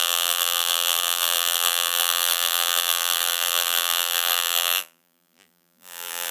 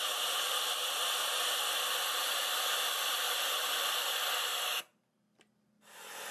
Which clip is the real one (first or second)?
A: second